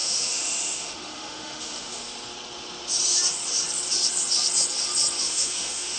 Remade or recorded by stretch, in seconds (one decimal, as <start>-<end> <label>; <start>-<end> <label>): 0.0-2.0 remade; 2.0-5.2 recorded; 5.2-6.0 remade